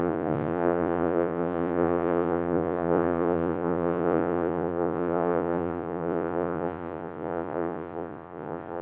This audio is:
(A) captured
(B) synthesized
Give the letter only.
B